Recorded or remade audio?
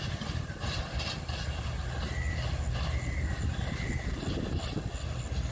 recorded